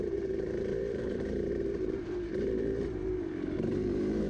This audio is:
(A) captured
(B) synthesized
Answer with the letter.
B